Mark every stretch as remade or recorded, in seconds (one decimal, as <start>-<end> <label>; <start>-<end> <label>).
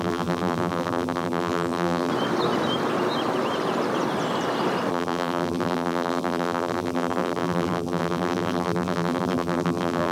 0.0-2.1 remade; 2.1-4.9 recorded; 4.9-10.1 remade